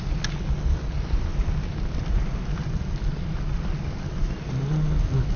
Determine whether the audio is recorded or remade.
recorded